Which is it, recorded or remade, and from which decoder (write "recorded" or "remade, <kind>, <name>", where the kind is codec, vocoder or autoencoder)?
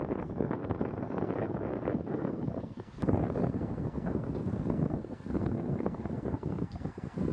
remade, codec, SNAC